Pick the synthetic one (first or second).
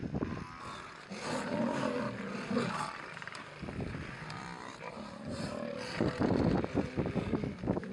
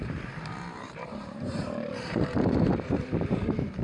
second